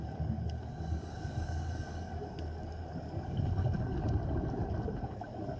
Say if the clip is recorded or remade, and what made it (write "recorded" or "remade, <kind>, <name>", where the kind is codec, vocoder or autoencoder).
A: remade, codec, DAC